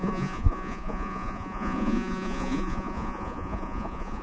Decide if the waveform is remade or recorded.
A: remade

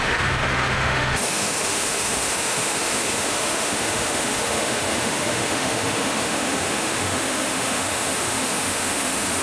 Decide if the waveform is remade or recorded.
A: remade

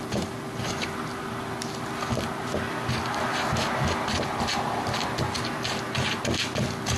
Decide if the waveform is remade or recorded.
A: recorded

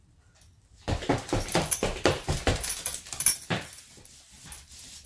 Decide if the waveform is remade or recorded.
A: recorded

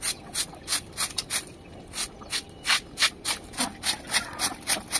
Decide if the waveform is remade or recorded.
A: recorded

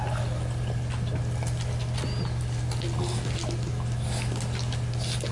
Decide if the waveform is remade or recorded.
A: recorded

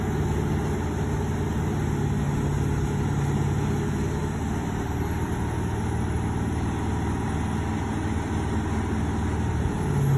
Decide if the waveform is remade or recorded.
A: recorded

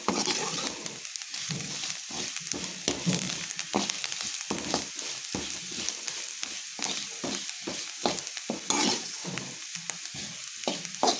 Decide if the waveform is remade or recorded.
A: recorded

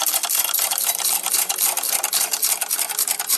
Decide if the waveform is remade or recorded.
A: remade